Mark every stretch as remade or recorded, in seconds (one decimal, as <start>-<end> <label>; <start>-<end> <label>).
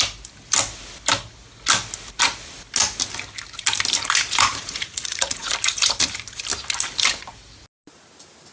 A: 0.0-4.5 recorded; 4.5-5.5 remade; 5.5-8.5 recorded